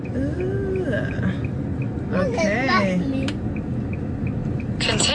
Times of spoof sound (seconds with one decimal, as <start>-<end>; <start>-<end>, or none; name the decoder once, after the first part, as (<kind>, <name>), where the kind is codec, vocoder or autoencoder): none